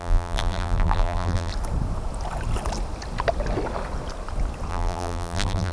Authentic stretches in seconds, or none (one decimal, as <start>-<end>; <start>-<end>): 1.5-4.7